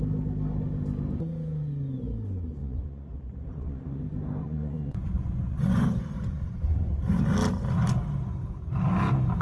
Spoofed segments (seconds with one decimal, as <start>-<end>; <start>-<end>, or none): 2.6-4.0; 4.4-7.2

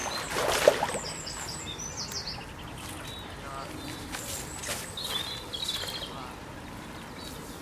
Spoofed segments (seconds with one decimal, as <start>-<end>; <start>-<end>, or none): none

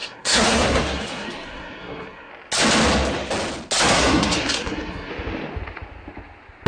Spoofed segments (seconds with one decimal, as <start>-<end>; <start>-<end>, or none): 0.0-2.3; 3.9-5.1

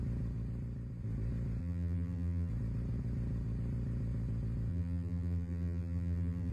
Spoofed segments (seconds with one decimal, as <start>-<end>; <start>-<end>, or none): 1.6-2.5; 4.7-6.5

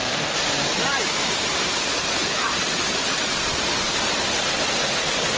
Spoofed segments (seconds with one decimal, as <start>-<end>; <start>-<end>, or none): 0.0-5.4

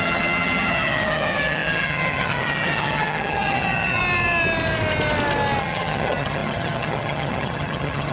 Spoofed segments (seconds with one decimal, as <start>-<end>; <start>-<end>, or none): 0.0-4.0; 5.6-8.1

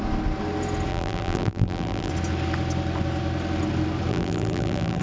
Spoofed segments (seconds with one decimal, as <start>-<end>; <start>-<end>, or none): 0.9-2.1; 4.1-5.0

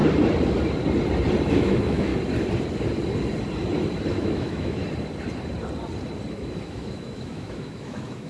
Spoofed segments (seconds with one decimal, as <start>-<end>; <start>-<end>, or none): 1.5-2.1; 4.1-4.8; 6.3-8.3